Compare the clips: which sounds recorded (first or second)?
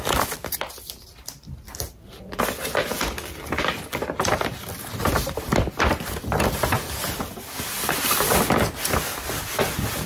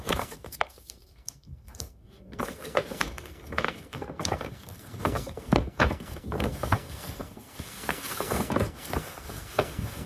first